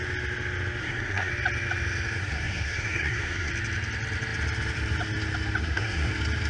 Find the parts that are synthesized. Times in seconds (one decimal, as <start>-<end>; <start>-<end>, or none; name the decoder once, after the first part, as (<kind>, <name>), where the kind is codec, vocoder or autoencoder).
0.8-1.3 (codec, SNAC); 2.2-3.5; 5.6-6.1